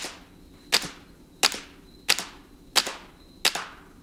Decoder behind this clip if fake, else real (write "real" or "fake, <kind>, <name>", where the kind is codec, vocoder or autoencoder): real